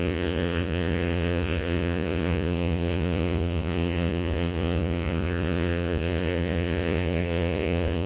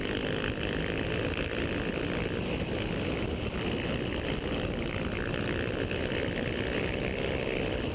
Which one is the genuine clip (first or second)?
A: second